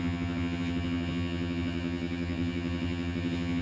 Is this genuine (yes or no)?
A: no